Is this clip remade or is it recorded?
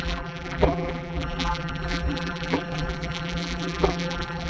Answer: remade